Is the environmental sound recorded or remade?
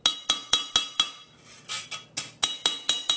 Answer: recorded